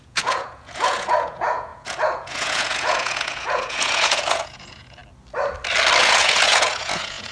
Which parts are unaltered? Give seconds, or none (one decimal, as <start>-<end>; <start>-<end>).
5.0-6.0